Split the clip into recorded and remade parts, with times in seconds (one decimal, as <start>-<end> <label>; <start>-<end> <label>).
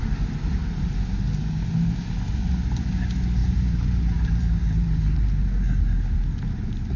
0.0-3.4 recorded; 3.4-4.9 remade; 4.9-7.0 recorded